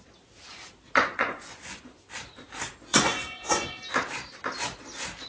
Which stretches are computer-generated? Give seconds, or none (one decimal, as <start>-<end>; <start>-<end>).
1.1-2.0; 2.9-3.8